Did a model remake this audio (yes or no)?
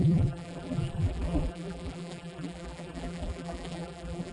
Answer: yes